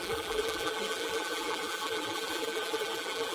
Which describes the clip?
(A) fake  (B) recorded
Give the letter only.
A